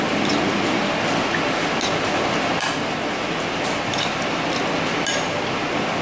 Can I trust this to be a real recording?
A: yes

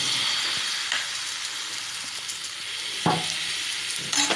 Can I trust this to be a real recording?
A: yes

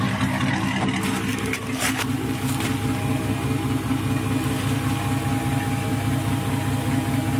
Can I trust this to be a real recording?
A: yes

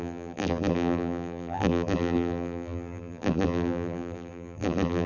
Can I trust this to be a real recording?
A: no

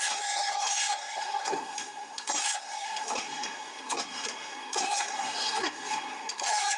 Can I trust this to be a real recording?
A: no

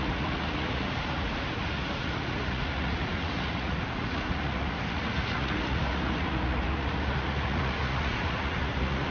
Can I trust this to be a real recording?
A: no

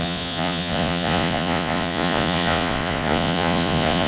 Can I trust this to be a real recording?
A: no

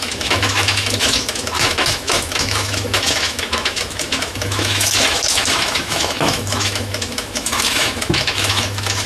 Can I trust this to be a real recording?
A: no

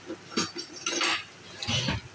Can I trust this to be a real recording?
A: yes